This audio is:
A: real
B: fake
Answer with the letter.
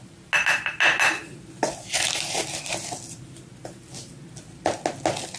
A